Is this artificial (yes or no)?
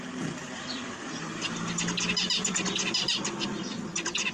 no